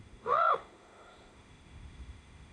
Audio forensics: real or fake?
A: fake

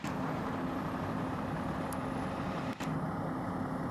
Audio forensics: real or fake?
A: real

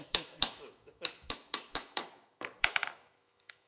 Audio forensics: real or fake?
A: fake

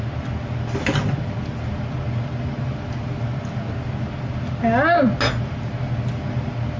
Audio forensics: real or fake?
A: real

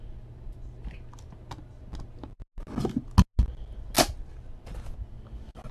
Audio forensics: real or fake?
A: real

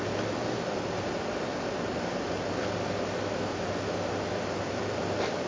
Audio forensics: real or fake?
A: real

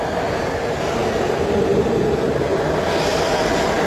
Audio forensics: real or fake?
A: real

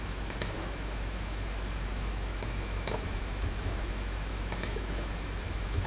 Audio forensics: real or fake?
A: fake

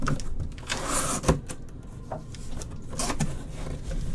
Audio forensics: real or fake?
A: real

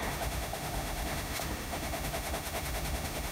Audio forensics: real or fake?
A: fake